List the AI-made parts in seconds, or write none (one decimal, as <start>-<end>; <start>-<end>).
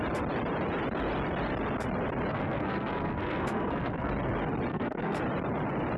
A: 2.3-4.1; 4.7-5.2